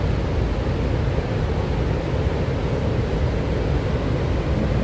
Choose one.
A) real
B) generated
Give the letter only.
A